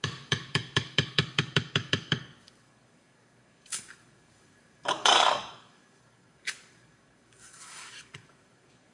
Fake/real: fake